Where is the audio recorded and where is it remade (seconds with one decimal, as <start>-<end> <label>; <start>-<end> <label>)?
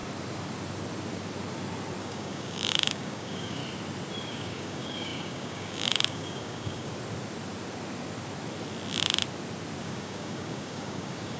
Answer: 0.0-2.0 recorded; 2.0-3.6 remade; 3.6-4.2 recorded; 4.2-6.9 remade; 6.9-9.8 recorded; 9.8-11.4 remade